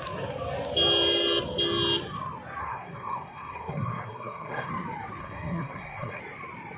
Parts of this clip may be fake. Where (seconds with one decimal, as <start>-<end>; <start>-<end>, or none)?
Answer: 2.6-4.7; 5.2-6.2